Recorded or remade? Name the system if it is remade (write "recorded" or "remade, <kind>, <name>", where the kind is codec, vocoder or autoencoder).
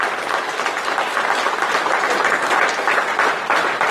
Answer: recorded